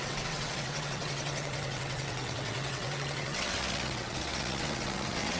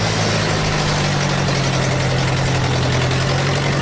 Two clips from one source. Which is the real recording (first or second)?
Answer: second